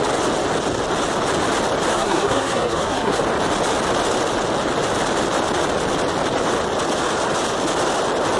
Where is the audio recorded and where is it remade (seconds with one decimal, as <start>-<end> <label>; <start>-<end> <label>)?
0.0-1.9 recorded; 1.9-3.2 remade; 3.2-8.4 recorded